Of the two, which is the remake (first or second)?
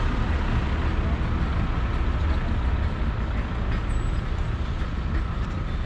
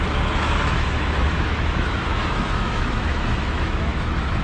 second